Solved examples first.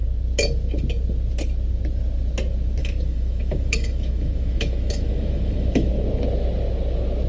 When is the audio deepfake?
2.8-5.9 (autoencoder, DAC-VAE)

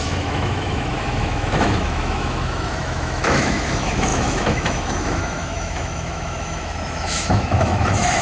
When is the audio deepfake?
0.0-8.2 (autoencoder, DAC-VAE)

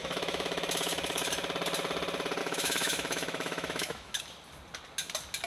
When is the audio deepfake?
0.0-1.3 (autoencoder, DAC-VAE); 2.4-4.2

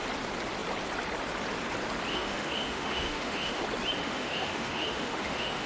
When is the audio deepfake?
2.1-3.6 (autoencoder, DAC-VAE); 4.0-5.7